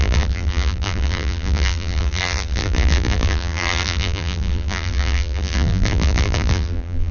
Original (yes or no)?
no